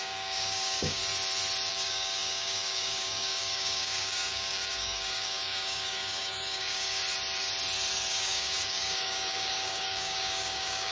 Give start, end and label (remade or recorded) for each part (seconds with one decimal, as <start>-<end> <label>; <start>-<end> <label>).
0.0-1.0 remade; 1.0-1.7 recorded; 1.7-7.0 remade; 7.0-8.1 recorded; 8.1-10.9 remade